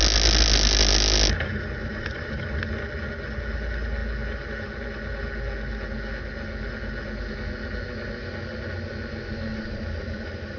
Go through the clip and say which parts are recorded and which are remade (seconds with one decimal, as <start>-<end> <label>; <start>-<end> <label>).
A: 0.0-1.8 recorded; 1.8-2.3 remade; 2.3-9.5 recorded; 9.5-10.6 remade